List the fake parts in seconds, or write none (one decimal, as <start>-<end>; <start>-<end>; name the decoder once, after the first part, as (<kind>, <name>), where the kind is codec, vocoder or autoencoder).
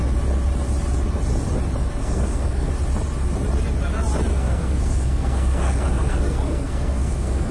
2.0-2.7 (codec, SNAC); 4.3-7.5